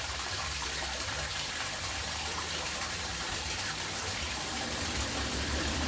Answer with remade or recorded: remade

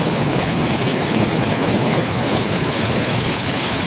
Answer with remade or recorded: remade